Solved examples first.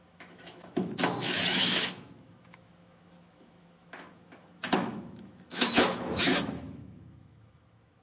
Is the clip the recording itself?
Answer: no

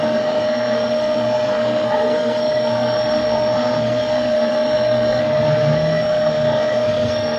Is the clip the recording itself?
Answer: no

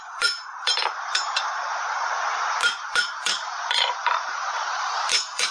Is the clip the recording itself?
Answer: no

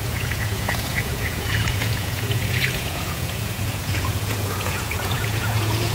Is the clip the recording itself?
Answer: no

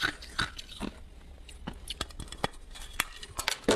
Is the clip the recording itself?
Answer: yes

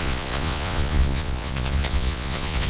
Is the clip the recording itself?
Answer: no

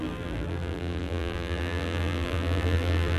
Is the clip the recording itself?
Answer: no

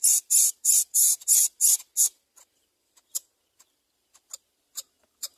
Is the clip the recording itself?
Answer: yes